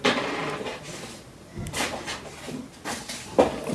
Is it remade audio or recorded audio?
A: recorded